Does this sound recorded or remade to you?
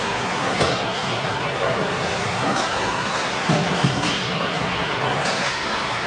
remade